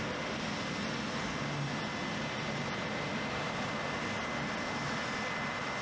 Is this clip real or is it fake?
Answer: real